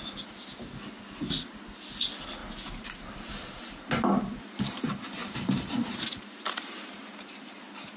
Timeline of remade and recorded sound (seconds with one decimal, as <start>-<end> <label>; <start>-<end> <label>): 0.0-2.4 recorded; 2.4-4.6 remade; 4.6-5.2 recorded; 5.2-7.6 remade; 7.6-8.0 recorded